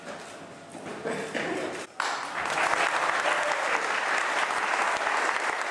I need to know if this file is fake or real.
real